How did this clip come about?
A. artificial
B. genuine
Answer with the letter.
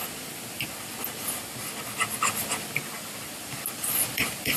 B